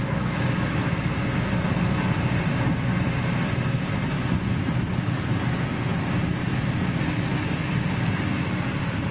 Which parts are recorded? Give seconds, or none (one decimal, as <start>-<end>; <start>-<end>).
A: 1.2-9.1